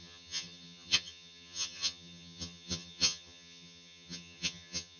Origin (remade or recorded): remade